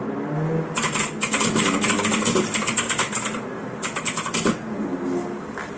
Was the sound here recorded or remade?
recorded